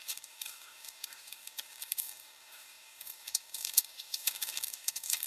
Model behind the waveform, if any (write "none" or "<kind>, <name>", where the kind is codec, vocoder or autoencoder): codec, DAC